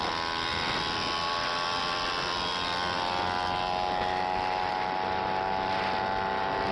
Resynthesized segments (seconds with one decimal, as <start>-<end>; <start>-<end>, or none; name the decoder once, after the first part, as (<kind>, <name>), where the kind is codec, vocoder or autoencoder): none